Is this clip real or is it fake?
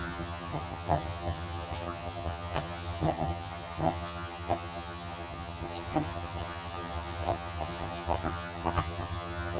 fake